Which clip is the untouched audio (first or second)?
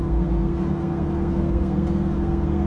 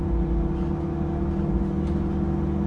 second